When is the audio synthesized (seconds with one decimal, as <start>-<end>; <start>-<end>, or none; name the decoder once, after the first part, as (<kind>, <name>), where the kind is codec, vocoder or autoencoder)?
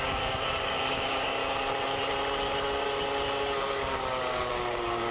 0.0-1.4 (codec, DAC); 4.5-5.1